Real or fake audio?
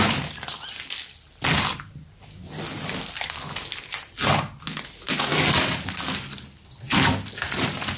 real